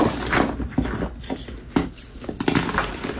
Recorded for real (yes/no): yes